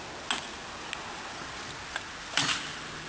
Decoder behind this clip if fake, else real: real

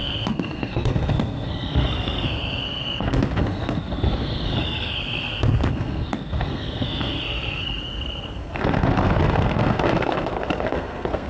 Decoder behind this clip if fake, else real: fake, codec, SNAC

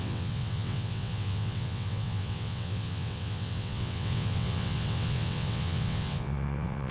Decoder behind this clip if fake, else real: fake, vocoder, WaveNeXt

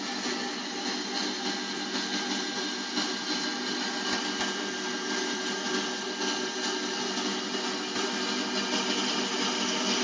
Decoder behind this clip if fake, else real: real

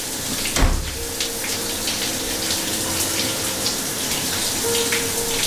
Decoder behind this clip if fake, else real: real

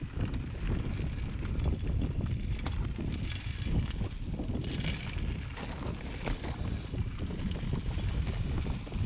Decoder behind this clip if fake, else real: real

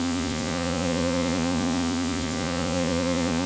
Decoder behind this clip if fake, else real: fake, vocoder, Vocos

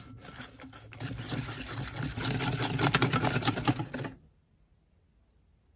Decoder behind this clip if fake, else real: real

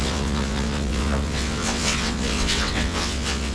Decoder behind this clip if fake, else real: fake, vocoder, WaveNeXt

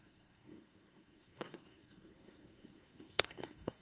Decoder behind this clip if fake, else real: fake, codec, SNAC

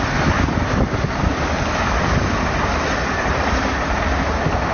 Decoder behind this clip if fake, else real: real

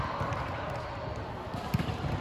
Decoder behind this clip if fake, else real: real